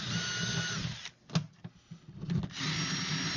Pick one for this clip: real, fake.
real